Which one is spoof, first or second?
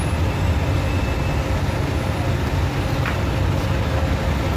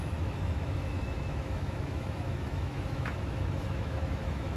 second